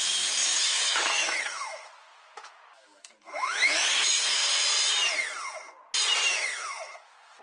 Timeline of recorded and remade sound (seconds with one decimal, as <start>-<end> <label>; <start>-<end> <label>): 0.0-4.4 remade; 4.4-6.3 recorded; 6.3-7.4 remade